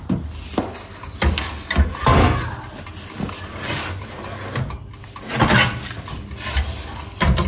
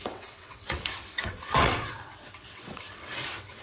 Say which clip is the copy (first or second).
second